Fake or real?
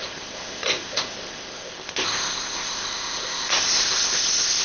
fake